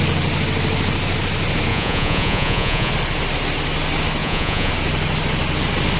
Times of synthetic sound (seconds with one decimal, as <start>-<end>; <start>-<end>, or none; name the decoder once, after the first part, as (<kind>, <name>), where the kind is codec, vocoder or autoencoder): 1.7-2.9 (vocoder, Vocos); 4.2-4.7